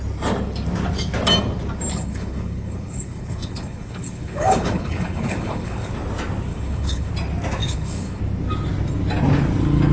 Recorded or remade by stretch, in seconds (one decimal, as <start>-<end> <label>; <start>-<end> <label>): 0.0-1.9 recorded; 1.9-5.9 remade; 5.9-6.5 recorded; 6.5-7.1 remade; 7.1-7.6 recorded; 7.6-8.2 remade; 8.2-9.9 recorded